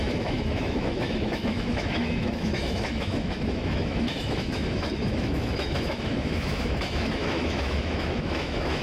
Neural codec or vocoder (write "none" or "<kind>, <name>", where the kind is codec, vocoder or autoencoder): autoencoder, DAC-VAE